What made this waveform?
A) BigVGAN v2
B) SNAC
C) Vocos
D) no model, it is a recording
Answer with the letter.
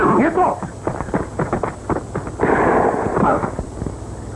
D